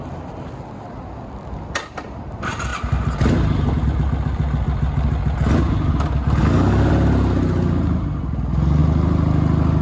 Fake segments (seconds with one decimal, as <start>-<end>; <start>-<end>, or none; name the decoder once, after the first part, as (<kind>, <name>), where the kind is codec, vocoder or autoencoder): 6.4-6.9 (codec, DAC)